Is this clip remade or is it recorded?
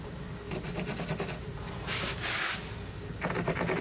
recorded